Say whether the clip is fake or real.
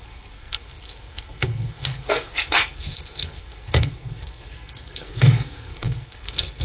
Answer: fake